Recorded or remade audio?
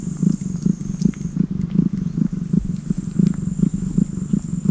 recorded